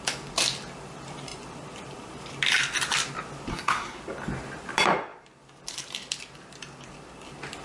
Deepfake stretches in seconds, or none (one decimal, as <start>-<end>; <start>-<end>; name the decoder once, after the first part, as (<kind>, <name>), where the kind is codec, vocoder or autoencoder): 3.5-4.0 (codec, SNAC)